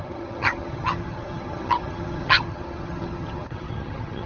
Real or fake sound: fake